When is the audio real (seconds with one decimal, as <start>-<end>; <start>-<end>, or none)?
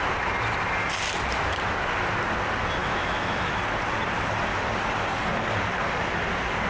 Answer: 0.0-2.8; 3.6-6.7